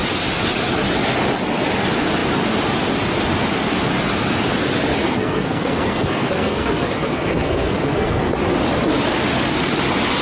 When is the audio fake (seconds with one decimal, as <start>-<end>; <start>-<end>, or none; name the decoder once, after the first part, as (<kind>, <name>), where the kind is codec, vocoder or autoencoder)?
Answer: 5.0-8.2 (codec, SNAC)